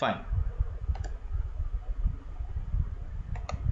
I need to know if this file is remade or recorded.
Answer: recorded